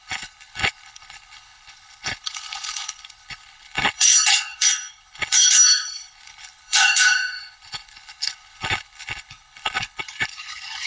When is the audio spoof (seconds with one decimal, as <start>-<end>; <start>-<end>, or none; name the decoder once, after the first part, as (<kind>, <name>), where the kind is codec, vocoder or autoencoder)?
0.0-10.9 (codec, HILCodec)